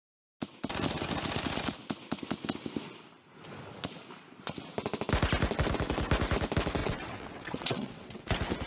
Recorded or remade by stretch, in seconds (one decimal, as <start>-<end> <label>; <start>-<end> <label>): 0.0-6.8 recorded; 6.8-8.2 remade; 8.2-8.7 recorded